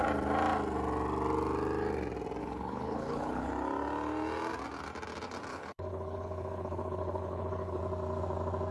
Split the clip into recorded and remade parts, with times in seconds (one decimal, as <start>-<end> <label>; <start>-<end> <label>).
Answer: 0.0-2.4 recorded; 2.4-3.5 remade; 3.5-5.5 recorded; 5.5-7.8 remade; 7.8-8.7 recorded